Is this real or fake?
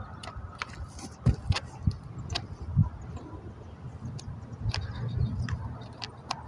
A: real